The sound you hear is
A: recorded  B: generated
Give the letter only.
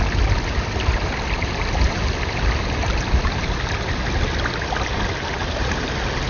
A